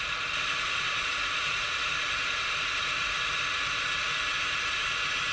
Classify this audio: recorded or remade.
remade